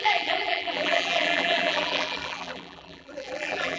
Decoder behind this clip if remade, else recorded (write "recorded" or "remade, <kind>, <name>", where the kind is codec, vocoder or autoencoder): remade, vocoder, BigVGAN v2